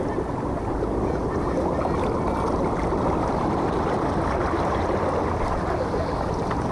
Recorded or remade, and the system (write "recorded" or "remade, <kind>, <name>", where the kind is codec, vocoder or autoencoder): recorded